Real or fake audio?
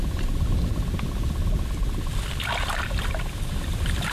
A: real